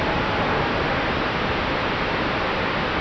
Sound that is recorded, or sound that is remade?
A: remade